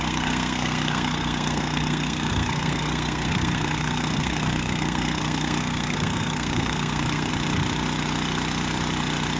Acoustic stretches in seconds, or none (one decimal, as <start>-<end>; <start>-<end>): 7.3-9.4